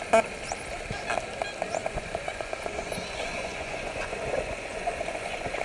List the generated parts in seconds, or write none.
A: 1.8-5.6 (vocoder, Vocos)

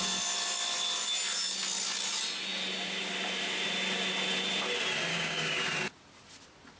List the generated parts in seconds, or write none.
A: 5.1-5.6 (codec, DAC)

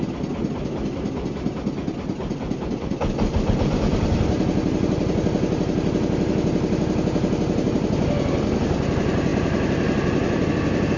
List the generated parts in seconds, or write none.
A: none

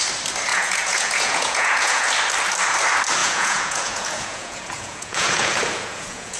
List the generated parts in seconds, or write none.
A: 0.5-2.1 (vocoder, Vocos); 3.2-6.4

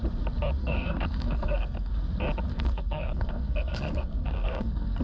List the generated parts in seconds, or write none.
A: 0.6-1.9 (codec, SNAC); 2.5-5.0